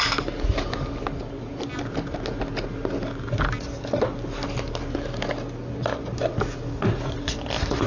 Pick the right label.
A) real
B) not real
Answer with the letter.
A